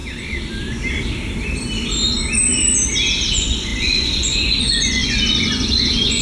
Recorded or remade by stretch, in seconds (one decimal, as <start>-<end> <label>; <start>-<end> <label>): 0.0-3.3 recorded; 3.3-6.2 remade